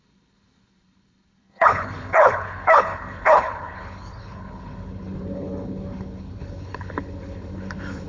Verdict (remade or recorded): remade